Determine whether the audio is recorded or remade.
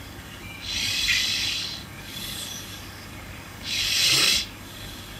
remade